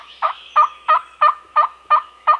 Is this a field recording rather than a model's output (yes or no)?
no